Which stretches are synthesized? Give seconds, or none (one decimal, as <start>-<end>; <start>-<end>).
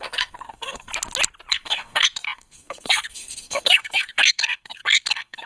0.0-0.9; 1.5-5.5